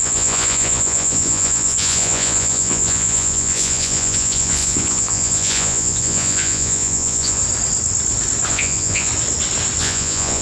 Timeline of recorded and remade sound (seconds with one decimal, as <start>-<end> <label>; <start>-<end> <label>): 0.0-7.4 remade; 7.4-8.5 recorded; 8.5-9.1 remade; 9.1-9.8 recorded; 9.8-10.4 remade